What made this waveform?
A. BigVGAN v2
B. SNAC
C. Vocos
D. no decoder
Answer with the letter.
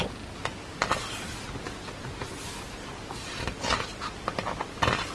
D